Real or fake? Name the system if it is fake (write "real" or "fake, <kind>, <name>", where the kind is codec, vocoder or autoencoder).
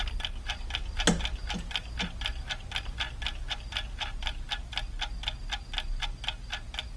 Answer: real